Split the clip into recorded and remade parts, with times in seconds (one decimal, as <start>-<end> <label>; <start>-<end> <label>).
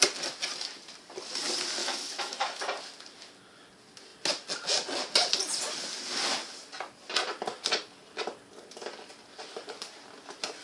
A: 0.0-1.8 recorded; 1.8-2.6 remade; 2.6-10.6 recorded